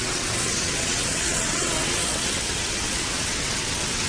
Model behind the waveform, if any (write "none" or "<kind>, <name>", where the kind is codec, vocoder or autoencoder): vocoder, WaveNeXt